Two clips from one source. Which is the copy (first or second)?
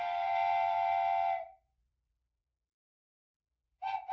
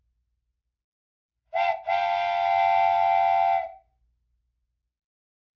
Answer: first